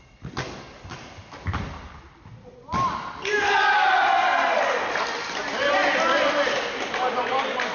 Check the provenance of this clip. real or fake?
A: real